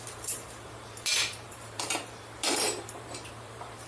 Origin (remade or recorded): remade